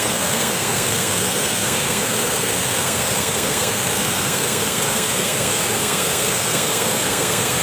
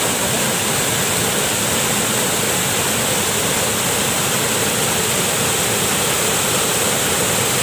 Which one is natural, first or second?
second